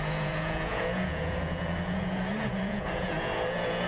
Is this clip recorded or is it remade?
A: remade